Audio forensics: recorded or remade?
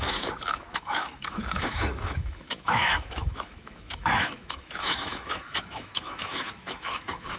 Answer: remade